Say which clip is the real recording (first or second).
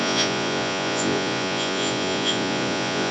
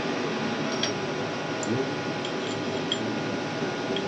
second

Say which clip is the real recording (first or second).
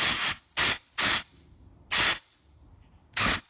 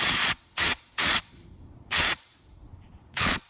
first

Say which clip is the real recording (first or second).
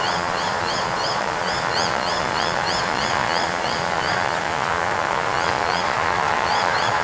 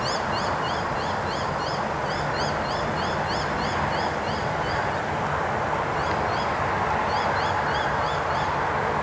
second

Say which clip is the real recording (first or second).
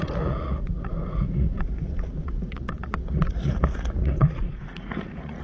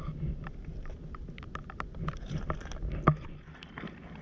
second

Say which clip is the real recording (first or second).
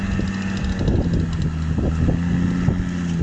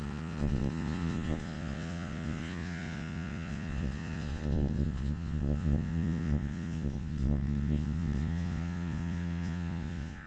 first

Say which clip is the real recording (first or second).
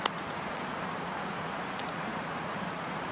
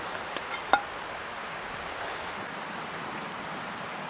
second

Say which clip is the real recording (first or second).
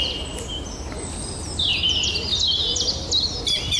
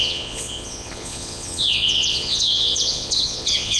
first